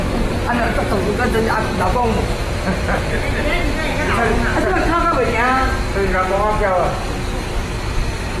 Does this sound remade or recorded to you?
recorded